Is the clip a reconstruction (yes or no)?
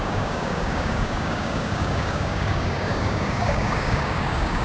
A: yes